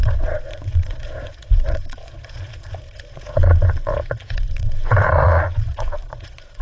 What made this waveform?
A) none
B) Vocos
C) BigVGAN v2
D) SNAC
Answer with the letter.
B